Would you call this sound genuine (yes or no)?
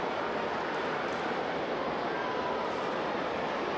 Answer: yes